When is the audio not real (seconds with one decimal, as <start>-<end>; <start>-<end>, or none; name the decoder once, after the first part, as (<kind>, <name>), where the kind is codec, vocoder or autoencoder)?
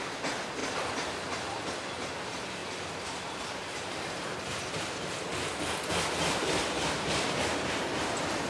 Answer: none